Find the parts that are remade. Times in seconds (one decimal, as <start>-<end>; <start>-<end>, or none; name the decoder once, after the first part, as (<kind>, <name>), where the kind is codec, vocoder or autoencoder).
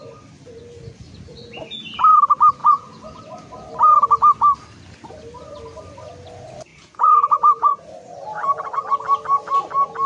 2.6-3.2 (vocoder, Vocos); 6.7-7.8